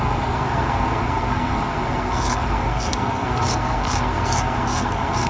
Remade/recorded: remade